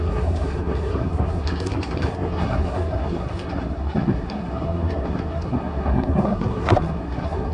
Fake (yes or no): yes